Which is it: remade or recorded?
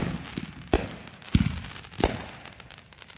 recorded